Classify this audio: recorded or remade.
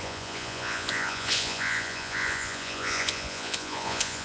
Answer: remade